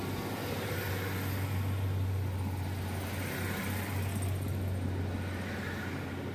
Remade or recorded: recorded